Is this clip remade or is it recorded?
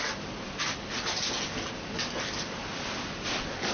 recorded